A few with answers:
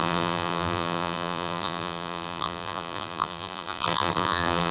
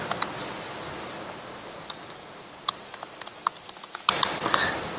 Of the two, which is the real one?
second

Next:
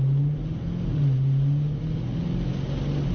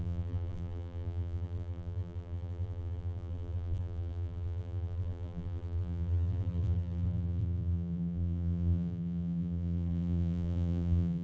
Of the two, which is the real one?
first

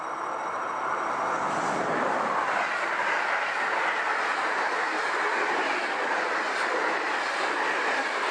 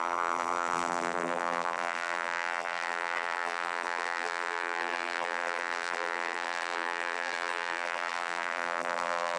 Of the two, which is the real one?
first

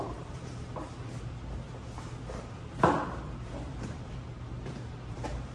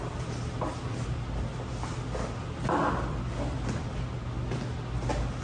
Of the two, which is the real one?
second